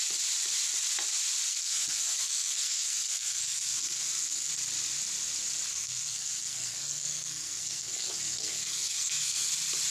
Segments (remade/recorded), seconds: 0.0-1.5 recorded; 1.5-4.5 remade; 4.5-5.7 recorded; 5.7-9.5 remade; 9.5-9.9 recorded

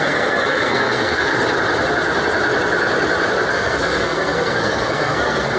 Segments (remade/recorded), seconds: 0.0-1.3 remade; 1.3-3.5 recorded; 3.5-5.6 remade

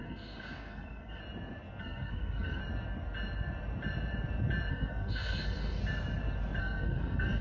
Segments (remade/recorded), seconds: 0.0-1.2 remade; 1.2-1.8 recorded; 1.8-2.6 remade; 2.6-4.7 recorded; 4.7-5.8 remade; 5.8-6.6 recorded; 6.6-7.4 remade

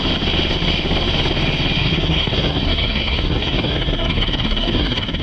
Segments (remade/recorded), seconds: 0.0-1.8 recorded; 1.8-5.2 remade

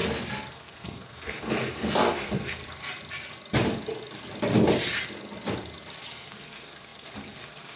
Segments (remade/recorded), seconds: 0.0-0.5 recorded; 0.5-2.6 remade; 2.6-6.1 recorded; 6.1-7.8 remade

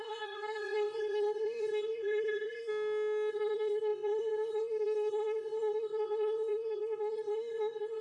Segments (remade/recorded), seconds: 0.0-2.7 remade; 2.7-3.3 recorded; 3.3-8.0 remade

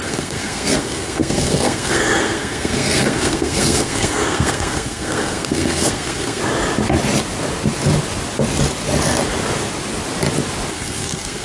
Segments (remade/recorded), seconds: 0.0-6.4 remade; 6.4-10.7 recorded; 10.7-11.4 remade